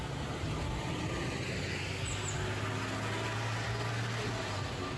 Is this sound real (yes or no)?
yes